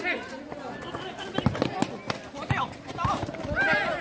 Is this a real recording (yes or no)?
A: yes